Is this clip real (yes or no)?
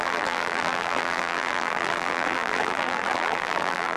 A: no